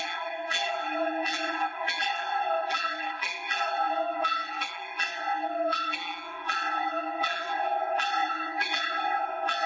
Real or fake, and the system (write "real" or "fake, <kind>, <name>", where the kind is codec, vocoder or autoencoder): fake, vocoder, BigVGAN v2